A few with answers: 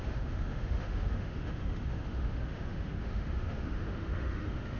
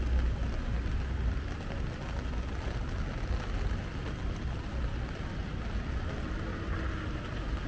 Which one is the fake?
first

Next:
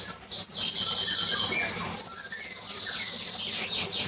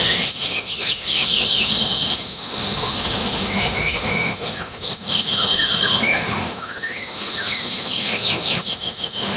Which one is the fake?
second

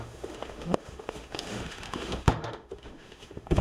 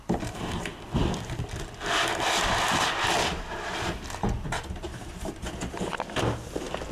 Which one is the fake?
first